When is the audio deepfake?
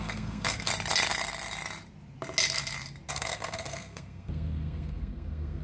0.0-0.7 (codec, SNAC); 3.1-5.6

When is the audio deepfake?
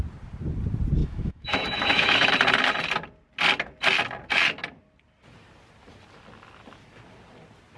1.0-2.3 (autoencoder, DAC-VAE)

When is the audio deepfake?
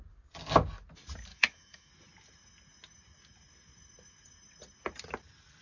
1.3-1.9 (autoencoder, DAC-VAE)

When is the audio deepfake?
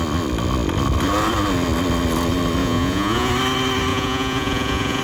2.6-3.3 (vocoder, Vocos); 3.9-5.0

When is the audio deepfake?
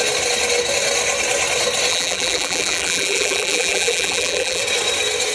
1.9-4.6 (vocoder, BigVGAN v2)